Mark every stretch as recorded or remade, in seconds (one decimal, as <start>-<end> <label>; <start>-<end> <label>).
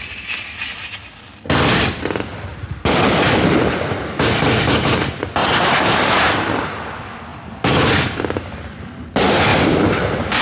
0.0-2.5 recorded; 2.5-3.8 remade; 3.8-5.4 recorded; 5.4-6.7 remade; 6.7-7.3 recorded; 7.3-8.2 remade; 8.2-9.5 recorded; 9.5-10.4 remade